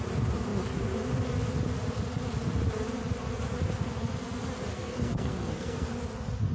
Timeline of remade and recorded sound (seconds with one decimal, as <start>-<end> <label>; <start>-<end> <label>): 0.0-4.7 recorded; 4.7-5.9 remade; 5.9-6.5 recorded